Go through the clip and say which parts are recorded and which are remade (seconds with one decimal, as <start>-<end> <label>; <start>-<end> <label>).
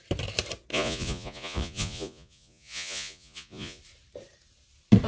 0.0-0.7 recorded; 0.7-3.8 remade; 3.8-5.1 recorded